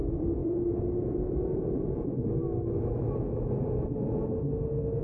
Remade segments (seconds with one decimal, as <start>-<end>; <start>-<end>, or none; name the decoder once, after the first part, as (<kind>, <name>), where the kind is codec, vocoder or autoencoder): 0.0-2.4 (vocoder, BigVGAN v2)